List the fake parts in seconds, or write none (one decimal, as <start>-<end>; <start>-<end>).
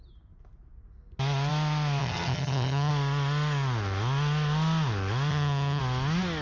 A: 2.0-2.9; 5.3-5.8